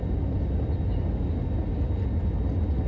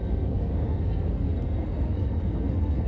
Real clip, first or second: first